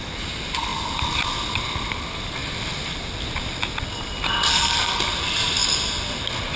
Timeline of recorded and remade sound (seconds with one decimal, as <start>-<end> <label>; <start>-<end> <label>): 0.0-4.5 recorded; 4.5-5.0 remade; 5.0-6.6 recorded